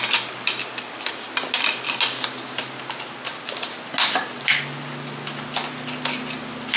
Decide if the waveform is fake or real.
real